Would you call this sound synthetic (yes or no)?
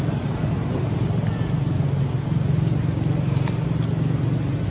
no